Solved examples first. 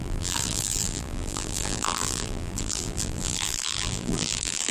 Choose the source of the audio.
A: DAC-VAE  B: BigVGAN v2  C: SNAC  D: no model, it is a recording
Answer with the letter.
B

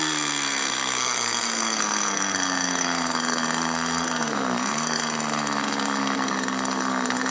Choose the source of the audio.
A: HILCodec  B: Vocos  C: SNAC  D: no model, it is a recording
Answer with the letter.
C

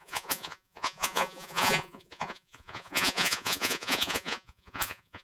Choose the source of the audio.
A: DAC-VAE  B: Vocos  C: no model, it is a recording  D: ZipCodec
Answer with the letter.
B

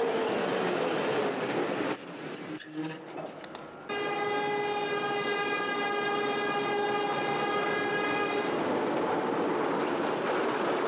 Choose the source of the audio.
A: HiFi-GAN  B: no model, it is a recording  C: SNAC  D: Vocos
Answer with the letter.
B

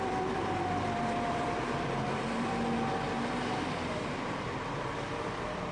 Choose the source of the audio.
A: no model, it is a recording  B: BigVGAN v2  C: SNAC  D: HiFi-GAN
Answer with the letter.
B